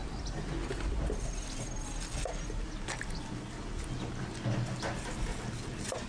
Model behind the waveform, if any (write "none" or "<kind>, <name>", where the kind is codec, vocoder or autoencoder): none